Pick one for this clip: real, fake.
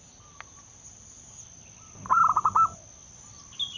real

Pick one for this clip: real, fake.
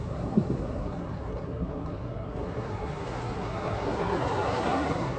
fake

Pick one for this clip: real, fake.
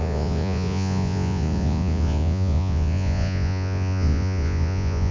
fake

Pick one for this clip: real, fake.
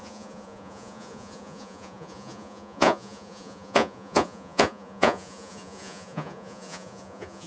fake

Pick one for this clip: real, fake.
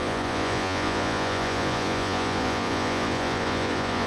fake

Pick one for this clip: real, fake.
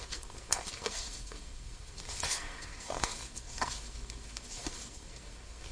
fake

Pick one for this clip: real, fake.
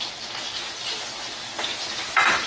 real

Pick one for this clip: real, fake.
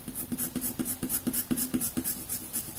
real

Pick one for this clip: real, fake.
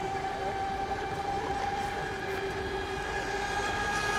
real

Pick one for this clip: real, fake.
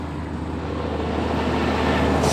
real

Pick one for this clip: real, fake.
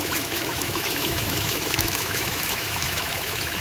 fake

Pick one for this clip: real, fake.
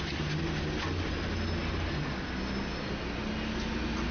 real